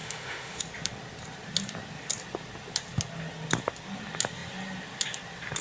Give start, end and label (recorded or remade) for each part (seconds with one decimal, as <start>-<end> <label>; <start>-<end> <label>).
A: 0.0-0.6 remade; 0.6-5.6 recorded